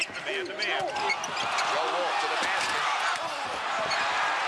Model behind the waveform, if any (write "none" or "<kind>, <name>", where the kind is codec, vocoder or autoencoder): none